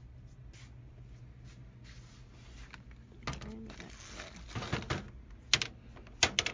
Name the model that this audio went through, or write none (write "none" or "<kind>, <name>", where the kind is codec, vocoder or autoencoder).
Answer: none